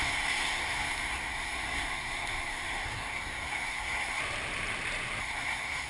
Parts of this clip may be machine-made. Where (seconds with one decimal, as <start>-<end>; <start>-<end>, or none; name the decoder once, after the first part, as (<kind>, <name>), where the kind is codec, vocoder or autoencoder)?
0.0-4.2 (codec, SNAC); 5.2-5.9